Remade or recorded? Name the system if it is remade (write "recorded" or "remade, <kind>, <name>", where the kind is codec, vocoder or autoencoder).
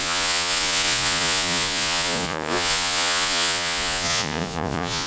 remade, vocoder, Vocos